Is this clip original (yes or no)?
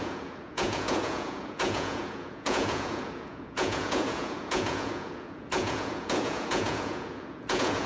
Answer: no